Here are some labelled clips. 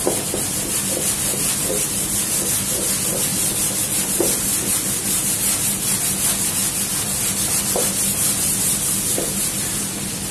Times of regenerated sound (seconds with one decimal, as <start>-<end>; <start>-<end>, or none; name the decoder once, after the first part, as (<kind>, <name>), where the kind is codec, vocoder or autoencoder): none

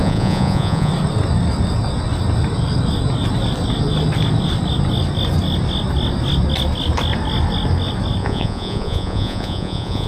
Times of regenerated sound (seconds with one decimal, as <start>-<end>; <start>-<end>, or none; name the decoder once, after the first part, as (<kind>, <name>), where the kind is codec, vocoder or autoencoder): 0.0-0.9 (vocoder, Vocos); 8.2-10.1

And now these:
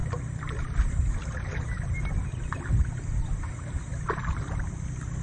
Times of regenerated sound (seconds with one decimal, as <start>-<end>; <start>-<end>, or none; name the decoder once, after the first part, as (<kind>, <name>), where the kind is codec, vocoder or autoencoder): none

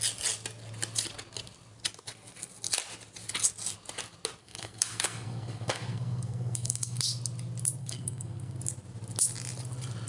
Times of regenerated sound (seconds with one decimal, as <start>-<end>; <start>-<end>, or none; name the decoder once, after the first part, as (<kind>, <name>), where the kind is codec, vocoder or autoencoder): 4.4-7.0 (codec, SNAC); 7.8-8.6

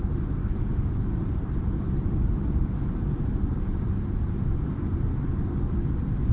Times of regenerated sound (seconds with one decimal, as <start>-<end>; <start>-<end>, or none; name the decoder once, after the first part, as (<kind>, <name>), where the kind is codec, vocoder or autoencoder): 0.4-1.1 (codec, DAC)

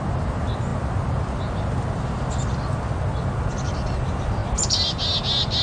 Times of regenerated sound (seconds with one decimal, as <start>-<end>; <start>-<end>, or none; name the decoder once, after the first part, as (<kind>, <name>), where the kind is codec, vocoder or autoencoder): none

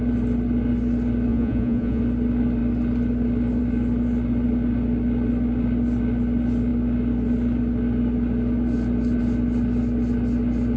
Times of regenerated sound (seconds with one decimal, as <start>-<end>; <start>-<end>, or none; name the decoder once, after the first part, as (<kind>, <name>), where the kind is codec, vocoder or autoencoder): 1.3-2.0 (vocoder, Vocos)

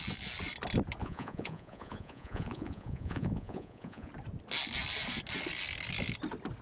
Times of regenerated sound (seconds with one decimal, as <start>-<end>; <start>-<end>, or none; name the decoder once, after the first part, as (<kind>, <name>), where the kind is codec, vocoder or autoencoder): 1.0-4.1 (vocoder, Vocos)